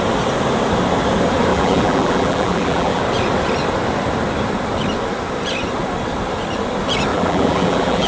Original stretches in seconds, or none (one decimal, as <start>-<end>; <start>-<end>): 0.0-1.5; 3.0-7.1